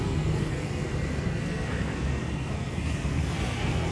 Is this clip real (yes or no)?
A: no